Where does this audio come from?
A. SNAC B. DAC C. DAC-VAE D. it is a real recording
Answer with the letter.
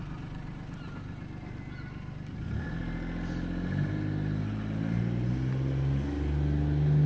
D